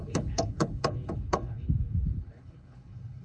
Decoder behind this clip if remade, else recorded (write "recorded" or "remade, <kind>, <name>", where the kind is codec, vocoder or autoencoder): remade, codec, HILCodec